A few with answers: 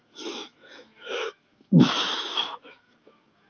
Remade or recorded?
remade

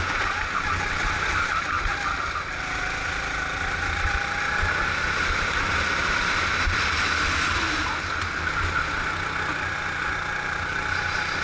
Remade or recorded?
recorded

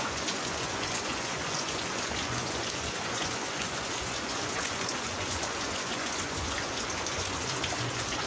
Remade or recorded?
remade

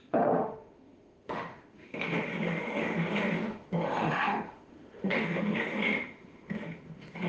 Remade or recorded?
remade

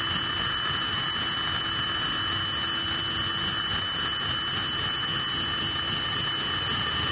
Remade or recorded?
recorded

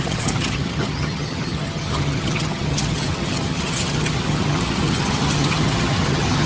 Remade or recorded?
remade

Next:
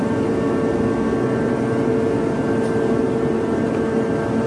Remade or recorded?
recorded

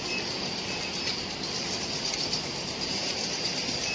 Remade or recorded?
recorded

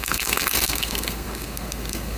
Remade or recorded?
remade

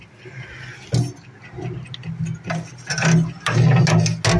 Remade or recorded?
recorded